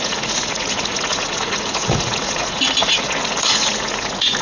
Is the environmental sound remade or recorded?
remade